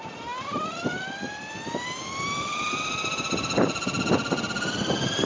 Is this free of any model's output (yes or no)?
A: yes